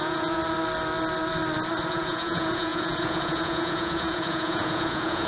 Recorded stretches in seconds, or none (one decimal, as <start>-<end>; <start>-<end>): 0.4-1.9